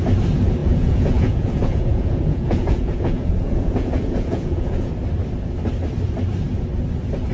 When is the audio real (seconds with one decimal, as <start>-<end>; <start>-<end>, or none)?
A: 0.0-0.6; 4.9-7.3